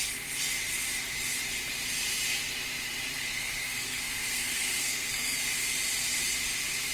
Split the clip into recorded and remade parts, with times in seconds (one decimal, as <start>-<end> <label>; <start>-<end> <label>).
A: 0.0-3.2 recorded; 3.2-5.4 remade; 5.4-6.9 recorded